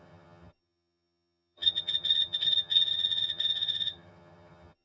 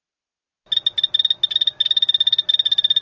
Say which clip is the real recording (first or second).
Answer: second